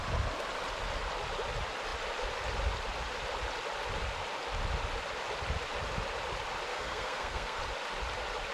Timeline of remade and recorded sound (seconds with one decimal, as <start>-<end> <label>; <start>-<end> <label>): 0.0-6.7 recorded; 6.7-7.6 remade; 7.6-8.5 recorded